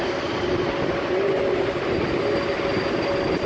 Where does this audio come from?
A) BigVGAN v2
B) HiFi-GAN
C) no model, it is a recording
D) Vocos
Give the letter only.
C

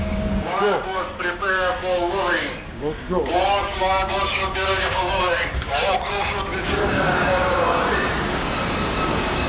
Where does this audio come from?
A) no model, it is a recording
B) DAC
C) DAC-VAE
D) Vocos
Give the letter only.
B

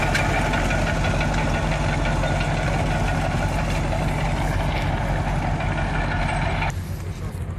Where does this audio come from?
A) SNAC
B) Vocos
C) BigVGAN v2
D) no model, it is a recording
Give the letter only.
D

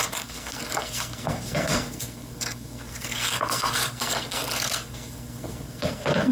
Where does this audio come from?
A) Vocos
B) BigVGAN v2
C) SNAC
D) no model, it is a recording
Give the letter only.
C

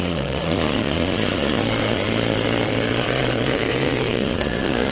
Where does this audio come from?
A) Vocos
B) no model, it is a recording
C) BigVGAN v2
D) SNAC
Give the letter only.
A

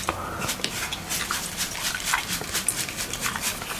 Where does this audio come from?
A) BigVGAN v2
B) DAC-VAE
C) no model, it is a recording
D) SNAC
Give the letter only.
C